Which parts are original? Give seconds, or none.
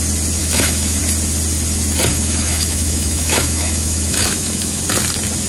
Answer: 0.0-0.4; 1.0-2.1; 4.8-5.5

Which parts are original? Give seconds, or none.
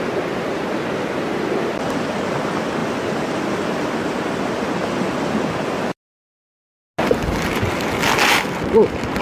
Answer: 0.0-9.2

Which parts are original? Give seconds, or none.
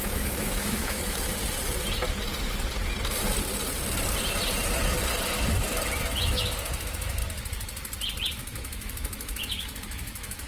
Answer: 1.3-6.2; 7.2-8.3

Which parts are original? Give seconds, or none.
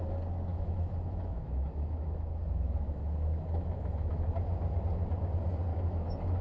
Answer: 0.0-0.5; 4.3-5.7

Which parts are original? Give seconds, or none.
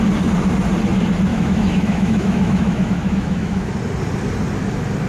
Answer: 0.0-1.3; 3.7-5.1